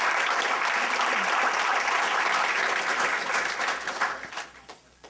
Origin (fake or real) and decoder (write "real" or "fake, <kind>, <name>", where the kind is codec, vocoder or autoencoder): real